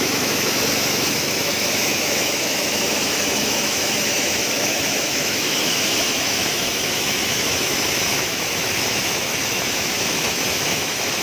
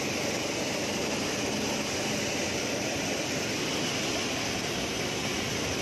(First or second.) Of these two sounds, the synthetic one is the first